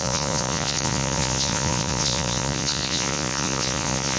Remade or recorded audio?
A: remade